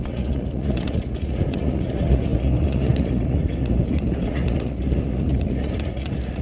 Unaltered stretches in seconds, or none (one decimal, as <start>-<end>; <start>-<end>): none